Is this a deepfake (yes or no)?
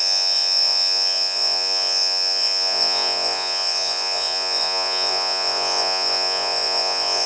yes